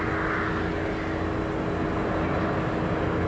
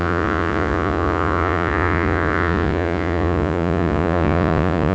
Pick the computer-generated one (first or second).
second